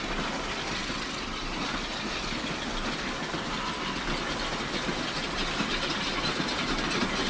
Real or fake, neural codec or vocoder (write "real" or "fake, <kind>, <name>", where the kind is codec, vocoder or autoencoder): real